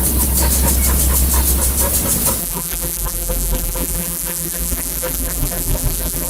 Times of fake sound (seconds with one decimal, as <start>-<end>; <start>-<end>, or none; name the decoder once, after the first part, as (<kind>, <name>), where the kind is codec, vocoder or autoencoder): 2.4-6.3 (vocoder, BigVGAN v2)